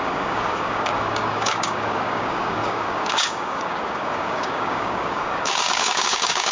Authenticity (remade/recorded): remade